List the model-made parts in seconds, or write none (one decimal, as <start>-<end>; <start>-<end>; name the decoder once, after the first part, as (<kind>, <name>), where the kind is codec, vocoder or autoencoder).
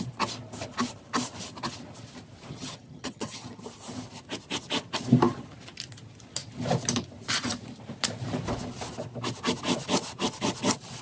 2.5-3.6 (vocoder, HiFi-GAN)